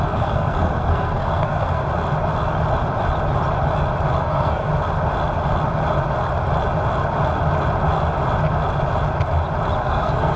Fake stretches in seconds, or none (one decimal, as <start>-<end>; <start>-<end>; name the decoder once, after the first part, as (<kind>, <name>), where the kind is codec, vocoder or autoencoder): 0.0-1.8 (codec, SNAC); 4.2-4.7; 9.8-10.4